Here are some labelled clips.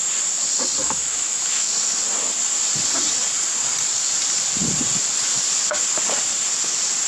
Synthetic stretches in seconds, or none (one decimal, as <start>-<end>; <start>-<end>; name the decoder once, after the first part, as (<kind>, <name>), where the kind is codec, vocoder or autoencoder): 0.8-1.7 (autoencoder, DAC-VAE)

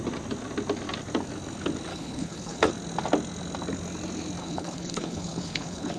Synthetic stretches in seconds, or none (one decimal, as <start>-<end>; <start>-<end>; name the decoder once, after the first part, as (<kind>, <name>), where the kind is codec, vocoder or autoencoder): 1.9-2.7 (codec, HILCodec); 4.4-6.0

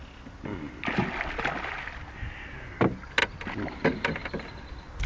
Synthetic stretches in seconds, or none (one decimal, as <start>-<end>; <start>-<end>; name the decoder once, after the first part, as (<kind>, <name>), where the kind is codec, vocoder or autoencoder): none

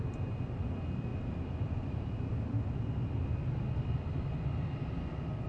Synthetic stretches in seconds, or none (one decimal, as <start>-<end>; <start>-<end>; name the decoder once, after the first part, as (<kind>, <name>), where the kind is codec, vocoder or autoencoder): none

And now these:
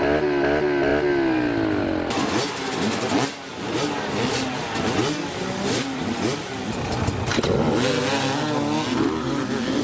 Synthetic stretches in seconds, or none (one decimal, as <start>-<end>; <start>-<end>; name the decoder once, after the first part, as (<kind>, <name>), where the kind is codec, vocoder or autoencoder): none

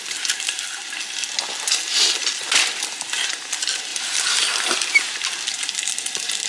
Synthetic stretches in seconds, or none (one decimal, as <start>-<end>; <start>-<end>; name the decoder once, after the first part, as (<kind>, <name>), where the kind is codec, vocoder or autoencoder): none